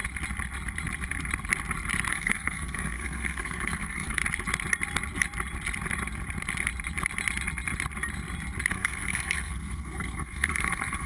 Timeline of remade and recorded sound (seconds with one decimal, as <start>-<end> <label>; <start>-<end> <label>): 0.0-2.1 recorded; 2.1-4.2 remade; 4.2-8.7 recorded; 8.7-11.1 remade